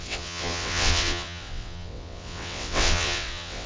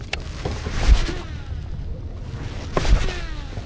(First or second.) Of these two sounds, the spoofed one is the first